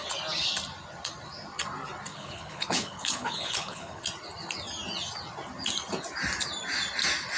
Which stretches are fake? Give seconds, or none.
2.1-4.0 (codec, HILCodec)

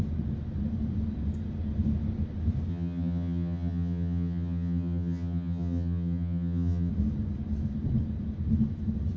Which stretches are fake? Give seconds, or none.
2.7-6.9 (vocoder, HiFi-GAN)

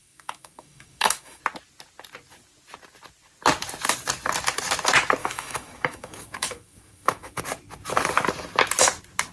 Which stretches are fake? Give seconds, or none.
0.0-1.4 (autoencoder, DAC-VAE); 5.2-7.4